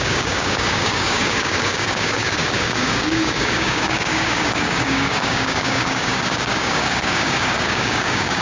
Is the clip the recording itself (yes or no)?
no